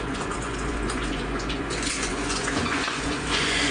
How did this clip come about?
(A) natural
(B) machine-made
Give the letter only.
B